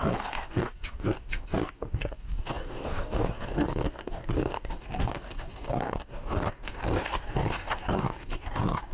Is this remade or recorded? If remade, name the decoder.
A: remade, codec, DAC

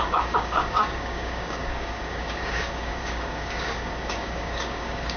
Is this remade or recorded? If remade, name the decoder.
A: remade, codec, DAC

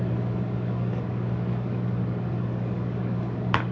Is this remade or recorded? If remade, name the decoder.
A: remade, codec, DAC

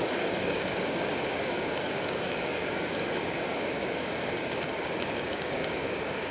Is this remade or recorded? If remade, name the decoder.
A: remade, codec, DAC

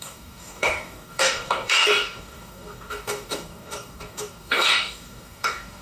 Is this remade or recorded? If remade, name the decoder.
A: remade, codec, DAC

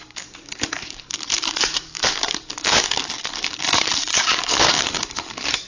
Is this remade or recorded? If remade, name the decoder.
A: remade, codec, DAC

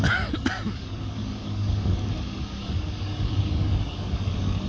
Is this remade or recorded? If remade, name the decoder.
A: remade, codec, DAC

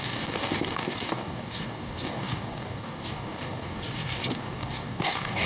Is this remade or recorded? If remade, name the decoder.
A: remade, codec, DAC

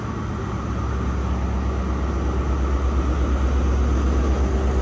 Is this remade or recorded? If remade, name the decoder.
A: recorded